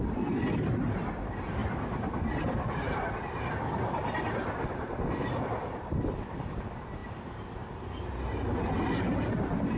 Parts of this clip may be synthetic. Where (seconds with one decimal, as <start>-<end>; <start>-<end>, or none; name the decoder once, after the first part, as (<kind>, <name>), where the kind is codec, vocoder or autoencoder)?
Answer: none